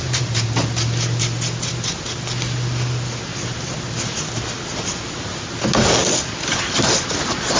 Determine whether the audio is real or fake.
real